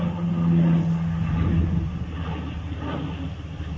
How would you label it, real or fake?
real